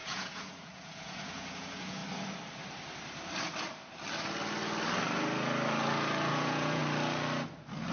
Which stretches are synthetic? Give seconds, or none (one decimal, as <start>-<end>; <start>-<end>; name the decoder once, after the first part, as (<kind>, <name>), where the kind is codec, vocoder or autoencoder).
0.0-2.0 (vocoder, Vocos); 6.3-6.8